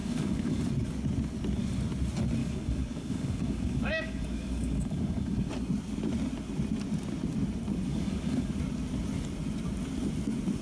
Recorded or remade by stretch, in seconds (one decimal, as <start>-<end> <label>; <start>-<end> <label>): 0.0-0.6 remade; 0.6-2.4 recorded; 2.4-5.5 remade; 5.5-7.9 recorded; 7.9-8.5 remade; 8.5-10.6 recorded